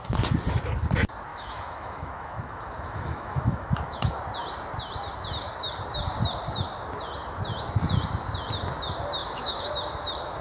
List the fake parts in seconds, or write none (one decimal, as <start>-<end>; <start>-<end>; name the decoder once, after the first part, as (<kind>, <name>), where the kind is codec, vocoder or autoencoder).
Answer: 1.3-4.2 (autoencoder, DAC-VAE); 9.2-9.7